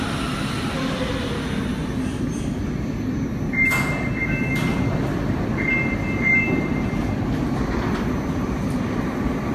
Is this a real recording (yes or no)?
yes